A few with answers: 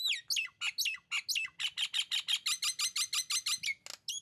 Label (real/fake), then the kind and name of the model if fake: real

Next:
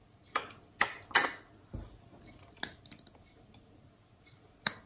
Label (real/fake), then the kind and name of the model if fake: real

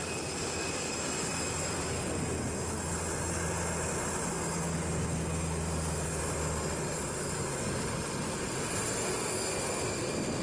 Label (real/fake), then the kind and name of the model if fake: real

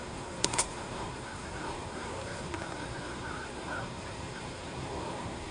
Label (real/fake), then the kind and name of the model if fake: fake, codec, SNAC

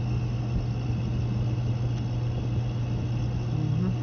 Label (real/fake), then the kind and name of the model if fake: real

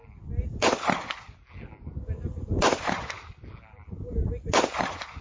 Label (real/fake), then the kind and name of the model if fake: real